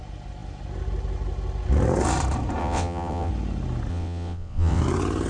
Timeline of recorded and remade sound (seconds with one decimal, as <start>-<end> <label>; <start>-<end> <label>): 0.0-2.6 recorded; 2.6-3.3 remade; 3.3-3.9 recorded; 3.9-4.8 remade; 4.8-5.3 recorded